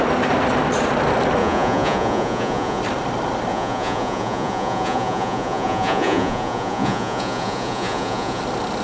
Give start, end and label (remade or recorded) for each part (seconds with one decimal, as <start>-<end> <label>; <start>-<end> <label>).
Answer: 0.0-1.4 recorded; 1.4-2.8 remade; 2.8-3.5 recorded; 3.5-8.4 remade; 8.4-8.8 recorded